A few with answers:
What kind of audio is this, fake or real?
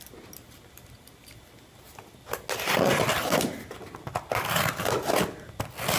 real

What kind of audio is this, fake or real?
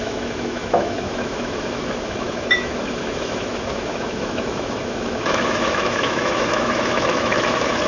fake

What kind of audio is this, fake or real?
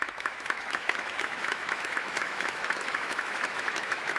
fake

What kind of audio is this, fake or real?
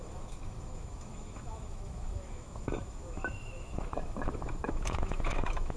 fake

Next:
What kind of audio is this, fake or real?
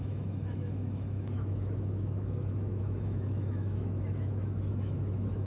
fake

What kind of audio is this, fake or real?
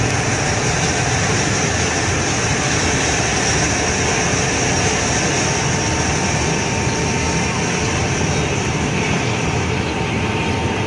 real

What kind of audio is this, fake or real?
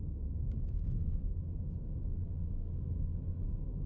fake